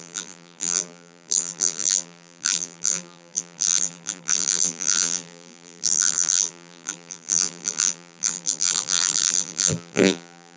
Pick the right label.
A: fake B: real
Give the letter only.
A